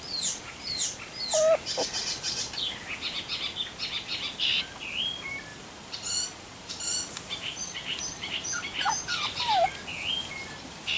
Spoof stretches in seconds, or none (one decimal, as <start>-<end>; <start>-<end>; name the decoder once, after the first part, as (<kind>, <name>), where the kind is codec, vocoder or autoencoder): 5.5-8.3 (vocoder, BigVGAN v2)